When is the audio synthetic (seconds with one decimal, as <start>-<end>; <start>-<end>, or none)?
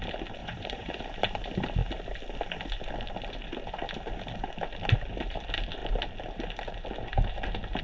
0.4-1.0